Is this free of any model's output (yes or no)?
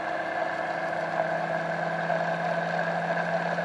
yes